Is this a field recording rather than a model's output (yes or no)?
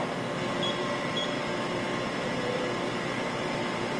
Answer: no